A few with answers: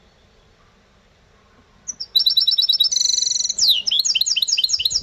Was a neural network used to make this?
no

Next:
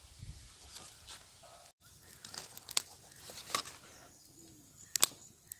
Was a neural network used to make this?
no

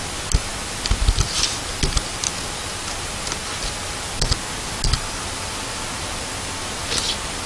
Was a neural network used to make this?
no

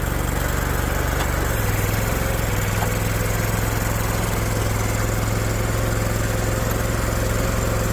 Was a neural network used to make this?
no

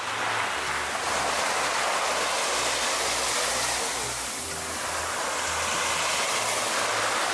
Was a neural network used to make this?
no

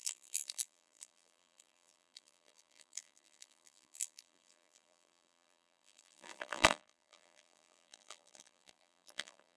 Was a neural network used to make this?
yes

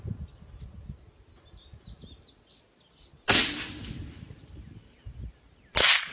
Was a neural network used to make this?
no